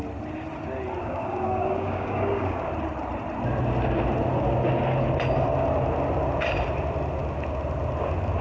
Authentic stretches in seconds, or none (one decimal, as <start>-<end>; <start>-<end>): 0.0-1.0; 2.7-8.4